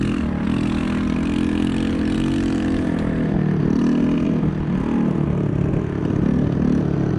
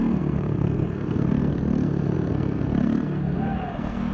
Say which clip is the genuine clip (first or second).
first